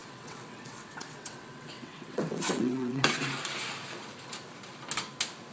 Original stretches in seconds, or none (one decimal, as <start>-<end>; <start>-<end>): 3.3-5.5

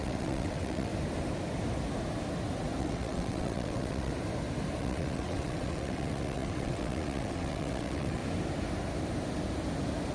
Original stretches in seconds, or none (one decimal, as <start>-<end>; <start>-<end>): 0.9-2.8; 4.1-4.8; 8.2-10.1

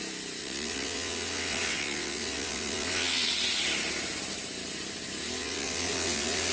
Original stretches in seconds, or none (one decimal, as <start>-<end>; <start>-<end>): 0.0-0.4; 3.3-5.4

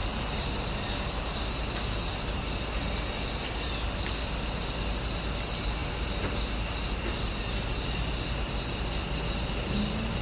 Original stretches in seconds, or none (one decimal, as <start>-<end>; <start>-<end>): 0.0-10.2

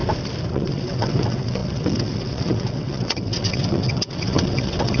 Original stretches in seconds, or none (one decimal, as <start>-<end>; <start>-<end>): 0.0-0.5

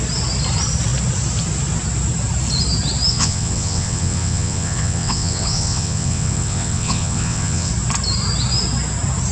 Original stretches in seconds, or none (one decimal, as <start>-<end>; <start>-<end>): 0.0-3.1; 7.7-9.3

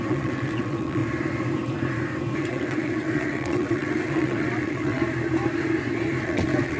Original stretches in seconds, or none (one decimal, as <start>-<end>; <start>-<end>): 1.0-2.4; 5.0-6.2